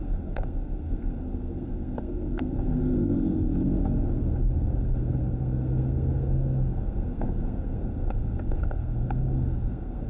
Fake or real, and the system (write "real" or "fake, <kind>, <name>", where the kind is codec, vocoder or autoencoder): fake, codec, SNAC